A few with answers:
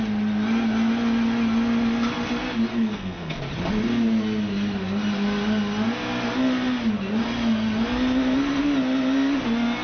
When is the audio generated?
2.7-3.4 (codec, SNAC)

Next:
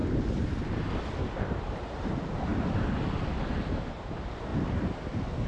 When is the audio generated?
1.3-2.5 (vocoder, BigVGAN v2); 3.4-4.5

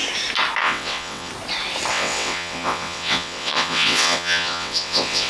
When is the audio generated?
0.6-1.3 (vocoder, WaveNeXt); 1.9-5.3

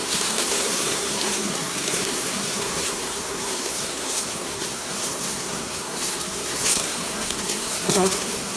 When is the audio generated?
0.0-8.6 (codec, SNAC)